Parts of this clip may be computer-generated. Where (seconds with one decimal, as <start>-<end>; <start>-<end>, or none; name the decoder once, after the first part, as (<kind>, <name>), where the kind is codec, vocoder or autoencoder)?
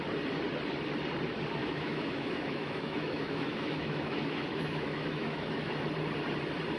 1.6-5.7 (autoencoder, DAC-VAE)